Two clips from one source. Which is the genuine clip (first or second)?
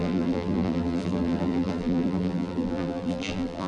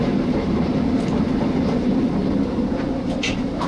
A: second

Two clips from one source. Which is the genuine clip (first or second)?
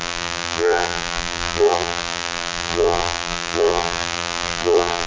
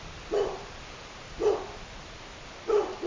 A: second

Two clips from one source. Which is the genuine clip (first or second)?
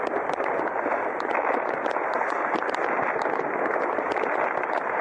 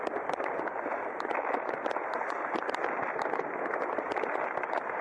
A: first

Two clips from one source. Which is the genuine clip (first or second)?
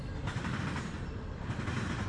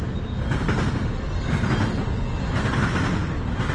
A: second